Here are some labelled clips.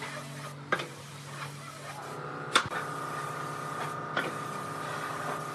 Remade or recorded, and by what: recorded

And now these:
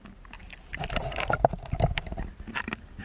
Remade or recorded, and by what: recorded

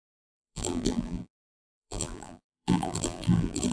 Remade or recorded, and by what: remade, vocoder, BigVGAN v2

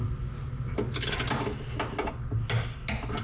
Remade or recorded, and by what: recorded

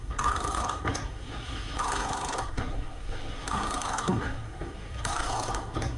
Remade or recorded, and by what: remade, codec, SNAC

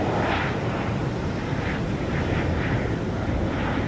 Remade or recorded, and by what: recorded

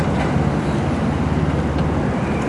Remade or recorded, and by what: recorded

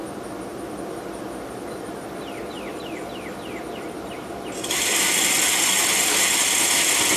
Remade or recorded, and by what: recorded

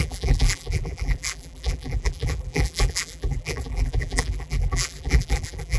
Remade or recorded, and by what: remade, vocoder, BigVGAN v2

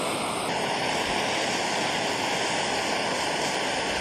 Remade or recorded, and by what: recorded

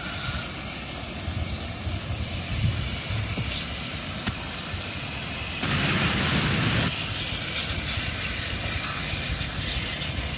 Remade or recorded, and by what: recorded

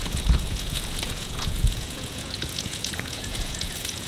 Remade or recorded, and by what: remade, vocoder, Vocos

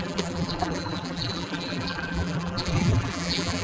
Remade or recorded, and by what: remade, vocoder, BigVGAN v2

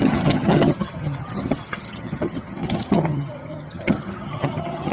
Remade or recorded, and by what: remade, vocoder, HiFi-GAN